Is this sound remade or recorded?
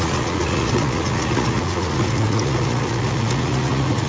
remade